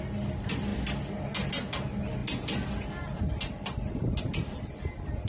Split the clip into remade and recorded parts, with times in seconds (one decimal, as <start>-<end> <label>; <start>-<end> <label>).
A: 0.0-5.3 recorded